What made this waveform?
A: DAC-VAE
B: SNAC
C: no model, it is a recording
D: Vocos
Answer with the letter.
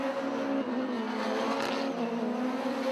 C